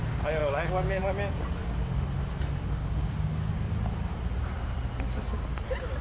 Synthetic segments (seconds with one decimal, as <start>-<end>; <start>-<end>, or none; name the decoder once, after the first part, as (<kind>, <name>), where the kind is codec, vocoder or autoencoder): 0.4-1.0 (codec, DAC); 2.8-3.5